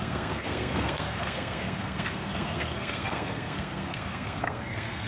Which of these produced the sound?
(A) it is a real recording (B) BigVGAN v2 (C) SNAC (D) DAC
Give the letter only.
C